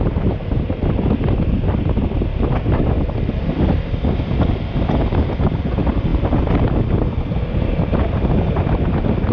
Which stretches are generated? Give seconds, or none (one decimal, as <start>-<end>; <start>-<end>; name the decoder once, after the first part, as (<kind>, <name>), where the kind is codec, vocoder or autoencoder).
none